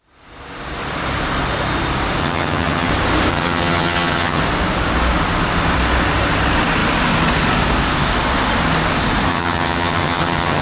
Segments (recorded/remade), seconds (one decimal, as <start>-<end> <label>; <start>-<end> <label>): 0.0-2.2 recorded; 2.2-2.9 remade; 2.9-3.3 recorded; 3.3-4.4 remade; 4.4-9.3 recorded; 9.3-10.6 remade

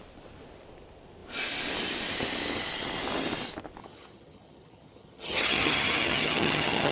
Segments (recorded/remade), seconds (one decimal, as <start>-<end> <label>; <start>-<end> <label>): 0.0-3.8 recorded; 3.8-6.9 remade

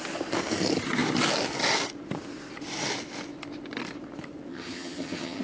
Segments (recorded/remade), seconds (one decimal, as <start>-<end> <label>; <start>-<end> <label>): 0.0-4.5 recorded; 4.5-5.4 remade

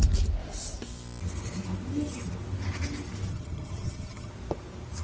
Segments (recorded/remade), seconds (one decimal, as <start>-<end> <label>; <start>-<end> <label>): 0.0-3.3 recorded; 3.3-4.3 remade; 4.3-5.0 recorded

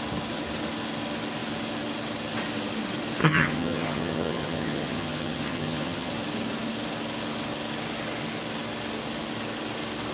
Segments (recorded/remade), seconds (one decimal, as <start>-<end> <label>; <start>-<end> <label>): 0.0-3.2 recorded; 3.2-6.1 remade; 6.1-10.1 recorded

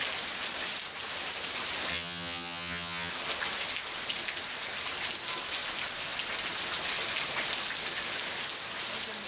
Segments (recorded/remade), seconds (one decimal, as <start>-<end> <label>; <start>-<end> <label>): 0.0-1.9 recorded; 1.9-3.1 remade; 3.1-9.3 recorded